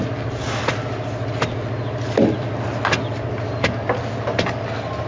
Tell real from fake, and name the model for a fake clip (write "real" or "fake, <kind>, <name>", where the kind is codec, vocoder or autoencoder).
real